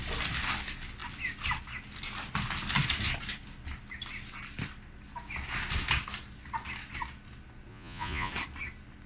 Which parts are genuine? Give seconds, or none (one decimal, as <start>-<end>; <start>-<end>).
0.0-7.7; 8.3-9.1